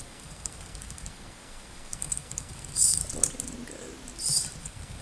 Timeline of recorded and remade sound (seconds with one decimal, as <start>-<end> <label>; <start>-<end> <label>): 0.0-3.0 remade; 3.0-4.6 recorded; 4.6-5.0 remade